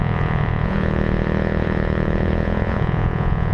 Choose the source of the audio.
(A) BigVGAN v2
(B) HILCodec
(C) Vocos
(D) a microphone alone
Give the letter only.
C